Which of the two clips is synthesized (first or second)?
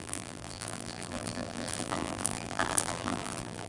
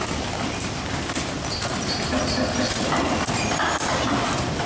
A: first